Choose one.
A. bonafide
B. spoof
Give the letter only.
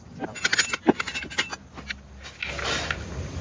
A